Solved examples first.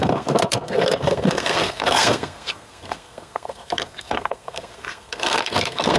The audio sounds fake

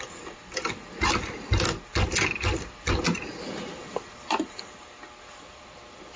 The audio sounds real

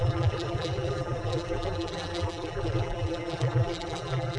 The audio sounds fake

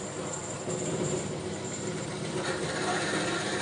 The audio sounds real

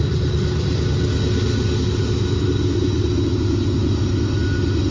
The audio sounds real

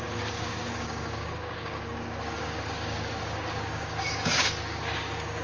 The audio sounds fake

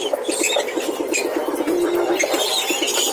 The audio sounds real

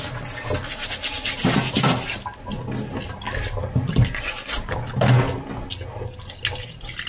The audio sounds real